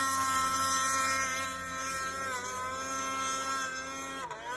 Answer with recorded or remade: recorded